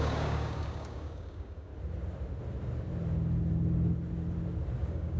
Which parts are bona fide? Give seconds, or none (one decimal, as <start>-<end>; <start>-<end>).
1.7-4.8